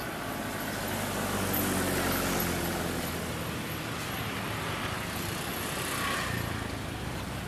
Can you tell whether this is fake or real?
real